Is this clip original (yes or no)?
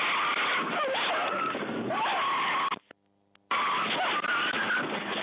yes